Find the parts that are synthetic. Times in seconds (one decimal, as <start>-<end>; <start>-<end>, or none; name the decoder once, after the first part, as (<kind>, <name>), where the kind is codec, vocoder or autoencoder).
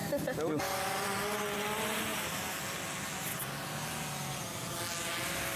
0.0-0.8 (vocoder, BigVGAN v2)